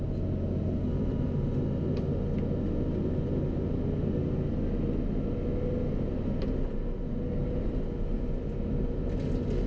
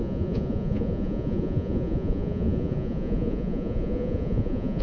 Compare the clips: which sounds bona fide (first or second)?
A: first